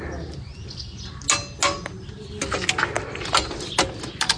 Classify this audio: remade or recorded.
recorded